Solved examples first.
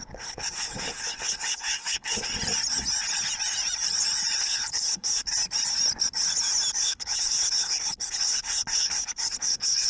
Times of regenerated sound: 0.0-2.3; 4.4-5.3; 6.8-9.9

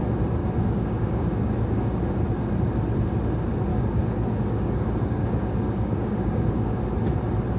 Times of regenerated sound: 0.4-2.0; 3.7-6.8

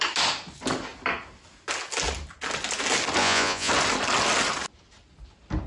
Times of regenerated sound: 3.2-3.7